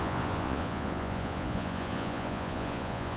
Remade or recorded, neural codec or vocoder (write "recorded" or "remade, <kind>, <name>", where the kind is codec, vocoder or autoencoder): remade, vocoder, Vocos